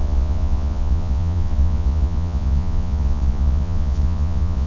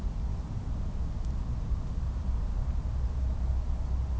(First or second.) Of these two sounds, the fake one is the first